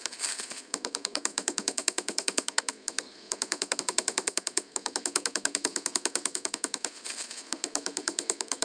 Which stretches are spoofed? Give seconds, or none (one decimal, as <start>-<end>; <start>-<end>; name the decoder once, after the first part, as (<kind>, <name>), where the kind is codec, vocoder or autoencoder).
0.0-8.6 (codec, SNAC)